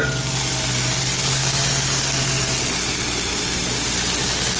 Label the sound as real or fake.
real